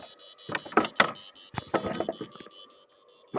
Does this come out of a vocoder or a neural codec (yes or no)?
no